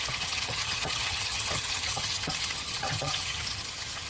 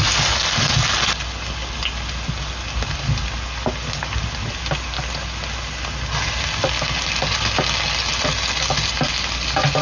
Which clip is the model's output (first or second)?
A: first